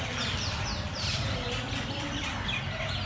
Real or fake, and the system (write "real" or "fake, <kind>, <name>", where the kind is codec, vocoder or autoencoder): real